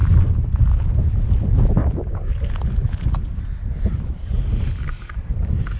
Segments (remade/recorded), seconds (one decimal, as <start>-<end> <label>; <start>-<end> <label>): 0.0-1.8 remade; 1.8-5.3 recorded; 5.3-5.8 remade